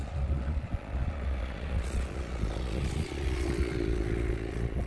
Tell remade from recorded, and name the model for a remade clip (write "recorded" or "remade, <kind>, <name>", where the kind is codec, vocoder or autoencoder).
remade, vocoder, Vocos